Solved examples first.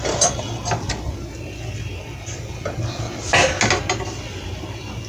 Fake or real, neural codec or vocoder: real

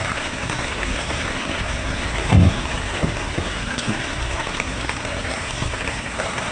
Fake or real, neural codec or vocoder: fake, codec, SNAC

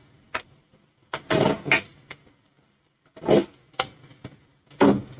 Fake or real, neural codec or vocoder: real